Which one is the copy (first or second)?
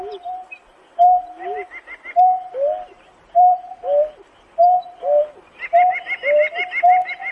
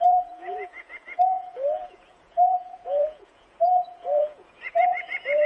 second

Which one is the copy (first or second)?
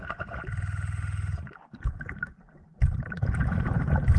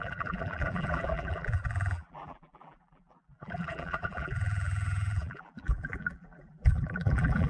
second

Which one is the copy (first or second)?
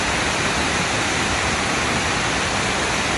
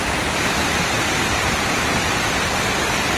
second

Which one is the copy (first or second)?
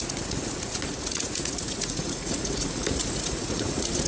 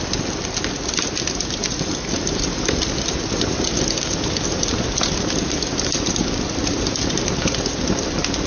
first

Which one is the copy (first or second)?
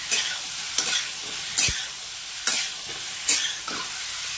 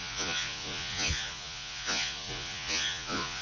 second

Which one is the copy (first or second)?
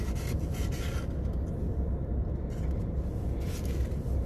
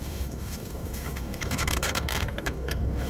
second